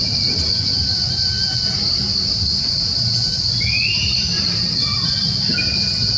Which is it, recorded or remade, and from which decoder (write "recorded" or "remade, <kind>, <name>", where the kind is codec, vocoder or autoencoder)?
recorded